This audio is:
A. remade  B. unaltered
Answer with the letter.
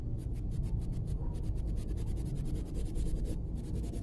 B